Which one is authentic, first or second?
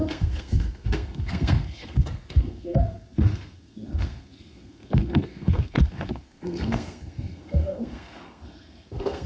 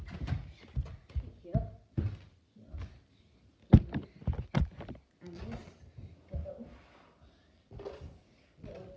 second